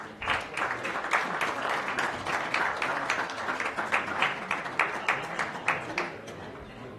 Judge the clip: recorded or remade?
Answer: recorded